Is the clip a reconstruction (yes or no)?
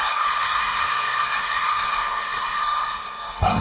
yes